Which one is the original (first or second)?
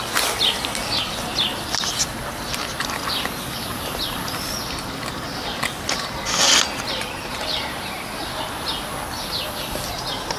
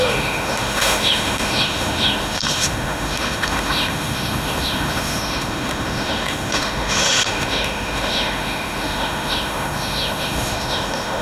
first